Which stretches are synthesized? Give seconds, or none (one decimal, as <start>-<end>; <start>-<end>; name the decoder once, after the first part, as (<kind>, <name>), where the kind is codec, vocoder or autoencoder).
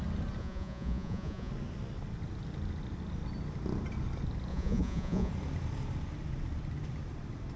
0.4-1.5 (vocoder, Vocos); 4.5-5.3